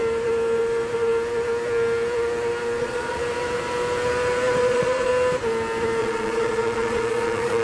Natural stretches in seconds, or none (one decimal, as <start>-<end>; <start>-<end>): 0.0-2.8; 3.2-4.6; 5.1-6.0